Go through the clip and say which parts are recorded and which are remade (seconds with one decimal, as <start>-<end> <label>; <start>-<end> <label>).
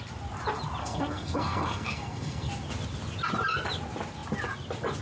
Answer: 0.0-0.8 recorded; 0.8-2.5 remade; 2.5-5.0 recorded